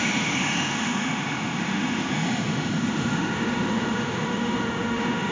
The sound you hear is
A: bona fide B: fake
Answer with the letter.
B